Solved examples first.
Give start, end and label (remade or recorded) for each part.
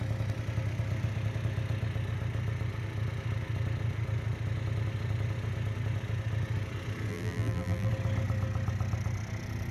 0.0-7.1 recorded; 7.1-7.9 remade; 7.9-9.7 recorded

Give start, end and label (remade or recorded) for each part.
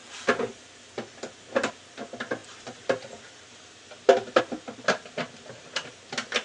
0.0-2.4 recorded; 2.4-4.4 remade; 4.4-6.4 recorded